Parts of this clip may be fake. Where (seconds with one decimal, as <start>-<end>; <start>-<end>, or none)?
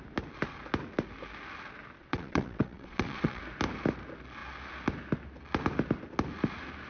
2.0-3.4